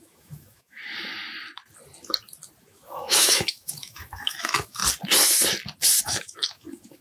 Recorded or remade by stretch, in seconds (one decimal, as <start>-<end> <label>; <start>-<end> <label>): 0.0-0.8 remade; 0.8-2.6 recorded; 2.6-4.8 remade; 4.8-6.0 recorded; 6.0-7.0 remade